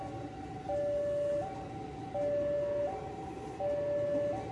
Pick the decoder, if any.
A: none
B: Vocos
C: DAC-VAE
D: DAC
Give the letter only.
A